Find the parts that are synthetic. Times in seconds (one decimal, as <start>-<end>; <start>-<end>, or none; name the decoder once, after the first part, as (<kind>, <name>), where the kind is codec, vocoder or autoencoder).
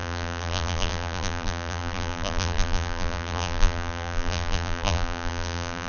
0.0-5.9 (vocoder, BigVGAN v2)